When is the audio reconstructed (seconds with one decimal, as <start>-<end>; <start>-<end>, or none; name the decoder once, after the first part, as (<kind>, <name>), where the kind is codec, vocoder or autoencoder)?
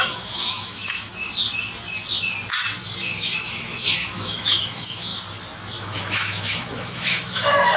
0.0-1.1 (autoencoder, DAC-VAE); 3.0-5.1; 5.8-7.8